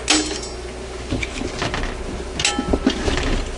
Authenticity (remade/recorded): recorded